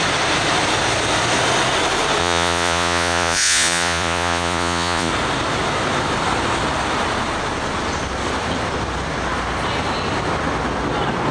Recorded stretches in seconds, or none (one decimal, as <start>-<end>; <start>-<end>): 0.0-2.2; 5.1-11.3